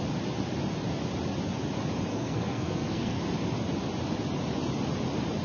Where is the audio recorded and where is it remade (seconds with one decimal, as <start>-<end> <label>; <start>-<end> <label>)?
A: 0.0-2.1 recorded; 2.1-3.2 remade; 3.2-5.4 recorded